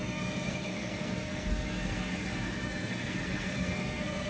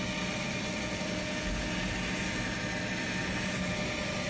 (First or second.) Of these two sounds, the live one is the second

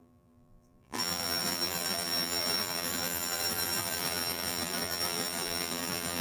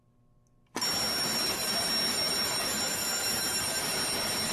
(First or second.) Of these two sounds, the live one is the second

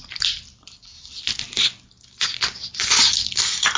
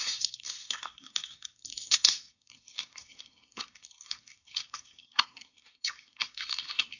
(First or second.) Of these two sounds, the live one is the first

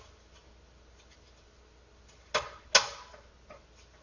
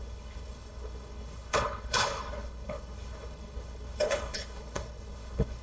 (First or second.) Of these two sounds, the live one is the first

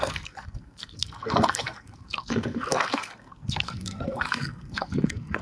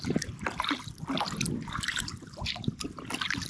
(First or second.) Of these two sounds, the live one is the second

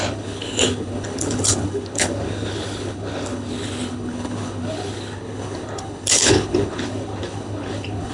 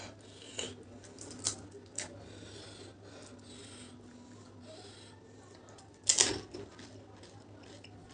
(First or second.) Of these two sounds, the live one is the second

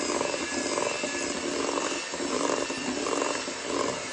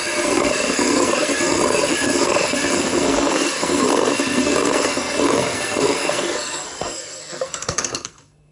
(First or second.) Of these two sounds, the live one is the first